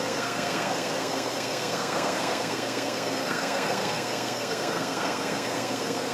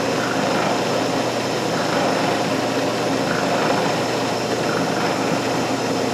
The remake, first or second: first